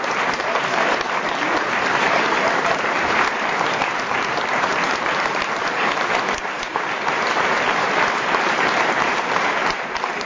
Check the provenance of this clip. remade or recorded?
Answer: remade